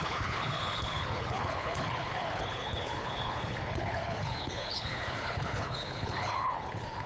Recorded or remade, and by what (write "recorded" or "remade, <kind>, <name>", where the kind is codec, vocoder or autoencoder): remade, codec, HILCodec